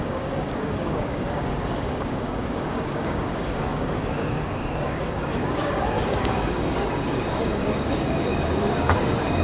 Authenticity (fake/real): fake